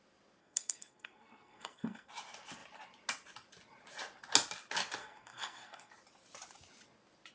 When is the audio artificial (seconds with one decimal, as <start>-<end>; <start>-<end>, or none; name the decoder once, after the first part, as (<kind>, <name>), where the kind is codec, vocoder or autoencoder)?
0.4-2.1 (codec, SNAC); 5.0-5.9